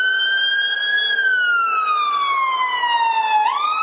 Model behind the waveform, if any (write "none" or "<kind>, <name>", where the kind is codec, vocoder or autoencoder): none